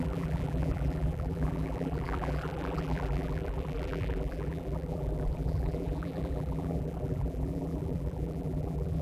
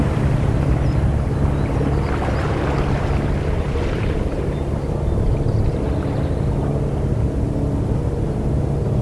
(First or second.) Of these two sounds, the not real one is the first